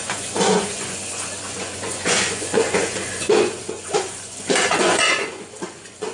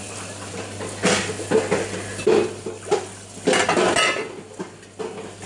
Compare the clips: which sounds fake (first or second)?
first